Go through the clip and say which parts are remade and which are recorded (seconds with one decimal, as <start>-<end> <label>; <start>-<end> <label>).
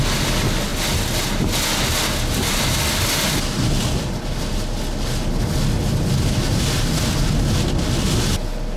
0.0-8.8 recorded